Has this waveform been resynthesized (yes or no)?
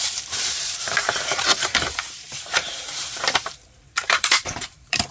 yes